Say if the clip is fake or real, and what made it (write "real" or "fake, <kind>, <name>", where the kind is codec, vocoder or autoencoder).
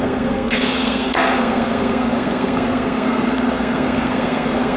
fake, codec, SNAC